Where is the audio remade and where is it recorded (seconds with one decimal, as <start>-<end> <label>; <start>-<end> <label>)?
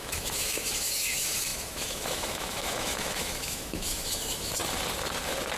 0.0-4.6 remade; 4.6-5.6 recorded